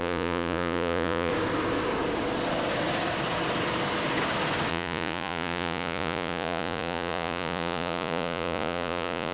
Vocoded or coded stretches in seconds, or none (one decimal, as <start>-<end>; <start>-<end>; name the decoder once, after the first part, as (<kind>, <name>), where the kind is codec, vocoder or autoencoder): 0.0-1.3 (vocoder, Vocos); 4.7-9.3